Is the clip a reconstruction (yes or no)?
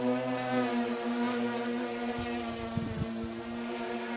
no